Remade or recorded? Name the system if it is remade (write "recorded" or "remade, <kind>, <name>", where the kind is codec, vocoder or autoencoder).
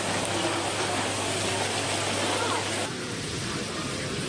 recorded